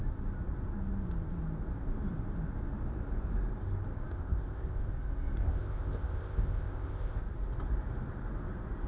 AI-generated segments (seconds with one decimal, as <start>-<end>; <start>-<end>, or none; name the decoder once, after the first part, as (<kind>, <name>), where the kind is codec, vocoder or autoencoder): 4.1-4.8 (codec, ZipCodec); 5.4-7.2